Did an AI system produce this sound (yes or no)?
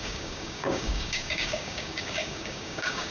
yes